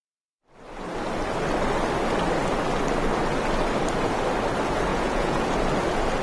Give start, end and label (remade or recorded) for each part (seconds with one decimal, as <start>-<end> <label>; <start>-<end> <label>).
0.0-4.9 recorded; 4.9-5.5 remade; 5.5-6.2 recorded